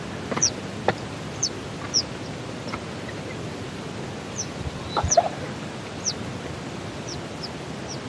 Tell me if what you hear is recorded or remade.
recorded